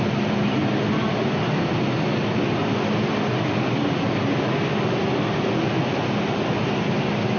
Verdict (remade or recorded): recorded